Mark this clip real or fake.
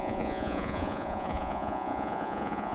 fake